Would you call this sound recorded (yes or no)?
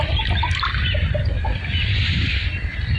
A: yes